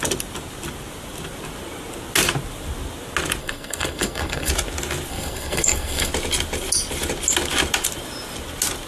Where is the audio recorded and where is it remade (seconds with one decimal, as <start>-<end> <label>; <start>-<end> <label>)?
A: 0.0-3.4 recorded; 3.4-4.5 remade; 4.5-5.1 recorded; 5.1-6.1 remade; 6.1-8.9 recorded